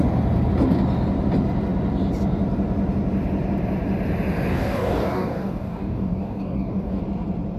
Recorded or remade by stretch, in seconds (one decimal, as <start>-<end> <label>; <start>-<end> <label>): 0.0-4.5 recorded; 4.5-7.0 remade; 7.0-7.6 recorded